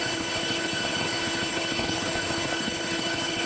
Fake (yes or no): yes